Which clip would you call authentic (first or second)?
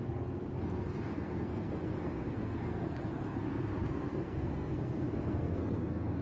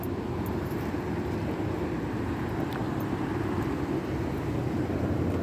second